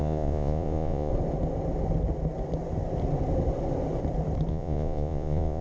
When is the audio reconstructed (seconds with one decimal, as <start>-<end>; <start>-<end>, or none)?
0.0-1.1; 4.5-5.6